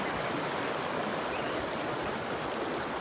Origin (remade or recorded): recorded